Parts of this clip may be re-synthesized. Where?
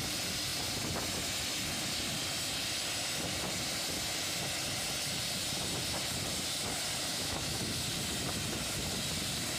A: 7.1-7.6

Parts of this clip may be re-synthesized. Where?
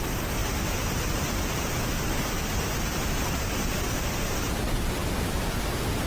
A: 0.0-6.1